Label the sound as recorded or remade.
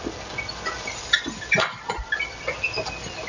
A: recorded